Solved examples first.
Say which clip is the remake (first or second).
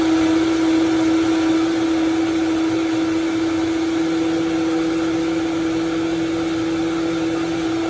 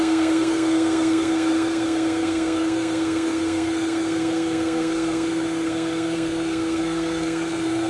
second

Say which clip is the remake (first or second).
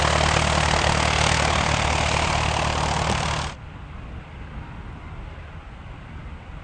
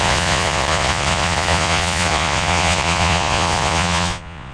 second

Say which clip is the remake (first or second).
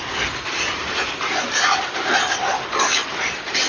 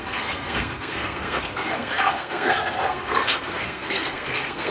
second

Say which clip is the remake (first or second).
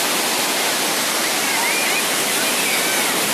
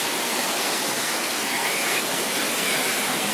second